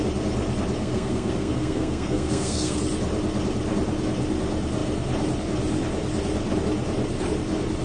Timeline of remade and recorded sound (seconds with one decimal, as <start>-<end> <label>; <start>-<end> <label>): 0.0-0.8 recorded; 0.8-2.8 remade; 2.8-7.8 recorded